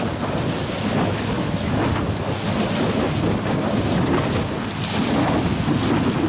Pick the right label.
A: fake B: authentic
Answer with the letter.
B